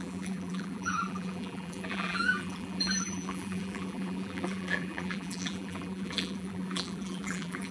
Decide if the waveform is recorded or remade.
remade